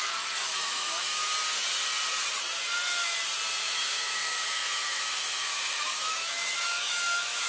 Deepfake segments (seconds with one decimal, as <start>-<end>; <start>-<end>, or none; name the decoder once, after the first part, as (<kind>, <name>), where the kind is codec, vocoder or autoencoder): 0.0-1.2 (autoencoder, DAC-VAE); 3.6-7.5